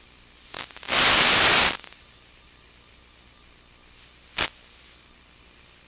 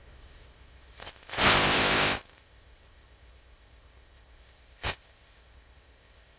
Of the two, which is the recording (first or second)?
first